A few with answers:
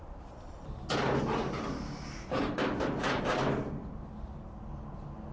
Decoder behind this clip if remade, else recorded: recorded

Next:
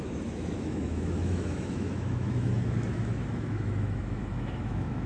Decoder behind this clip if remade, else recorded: remade, autoencoder, DAC-VAE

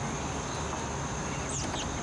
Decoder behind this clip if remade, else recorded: recorded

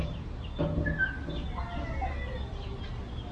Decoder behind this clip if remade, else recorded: recorded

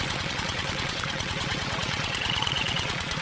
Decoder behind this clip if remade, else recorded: remade, vocoder, WaveNeXt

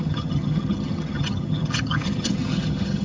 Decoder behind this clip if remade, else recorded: remade, vocoder, HiFi-GAN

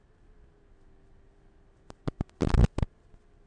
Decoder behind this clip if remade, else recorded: recorded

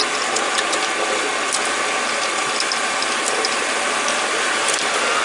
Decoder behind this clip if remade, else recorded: recorded